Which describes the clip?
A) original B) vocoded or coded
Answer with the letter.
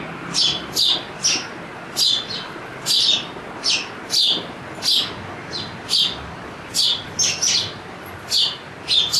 A